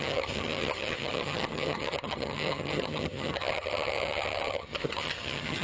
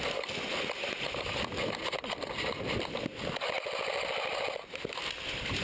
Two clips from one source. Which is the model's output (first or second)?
first